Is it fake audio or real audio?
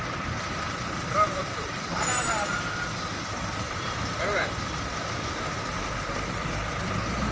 fake